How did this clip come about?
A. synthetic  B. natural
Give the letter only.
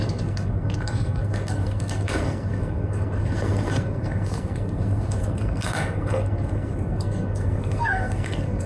A